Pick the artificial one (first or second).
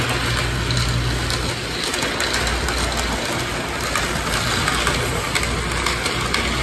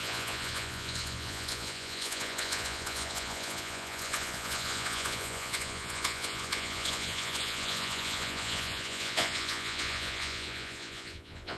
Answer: second